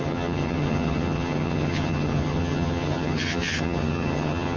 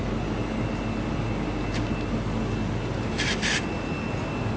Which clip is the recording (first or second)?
second